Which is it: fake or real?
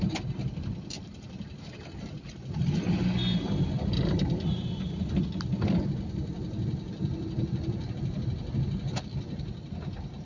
real